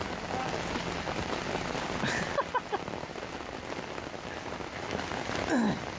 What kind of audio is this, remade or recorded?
recorded